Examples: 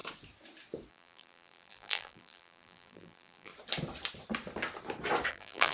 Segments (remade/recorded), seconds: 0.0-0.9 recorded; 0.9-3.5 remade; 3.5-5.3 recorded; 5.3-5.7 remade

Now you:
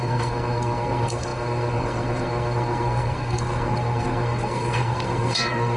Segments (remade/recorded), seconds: 0.0-5.8 remade

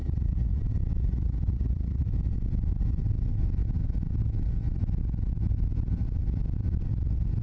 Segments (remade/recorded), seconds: 0.0-0.6 remade; 0.6-1.0 recorded; 1.0-2.1 remade; 2.1-7.4 recorded

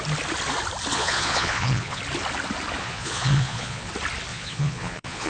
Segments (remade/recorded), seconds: 0.0-0.9 recorded; 0.9-2.0 remade; 2.0-2.8 recorded; 2.8-3.9 remade; 3.9-4.3 recorded; 4.3-5.3 remade

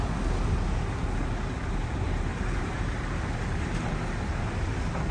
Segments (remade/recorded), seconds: 0.0-2.3 recorded; 2.3-4.0 remade; 4.0-5.1 recorded

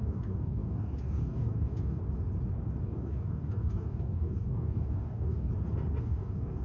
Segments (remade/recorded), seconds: 0.0-2.0 remade; 2.0-2.8 recorded; 2.8-5.5 remade; 5.5-6.0 recorded; 6.0-6.6 remade

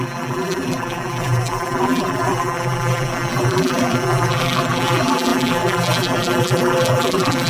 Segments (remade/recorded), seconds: 0.0-7.5 remade

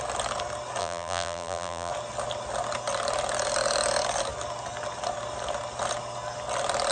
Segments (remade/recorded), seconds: 0.0-0.8 recorded; 0.8-1.9 remade; 1.9-6.9 recorded